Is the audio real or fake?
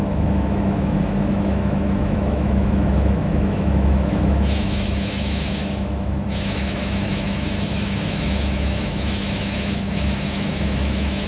fake